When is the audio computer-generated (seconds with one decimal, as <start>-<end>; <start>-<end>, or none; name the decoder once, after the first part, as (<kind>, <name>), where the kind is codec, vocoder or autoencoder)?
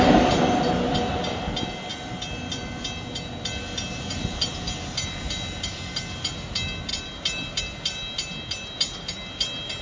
none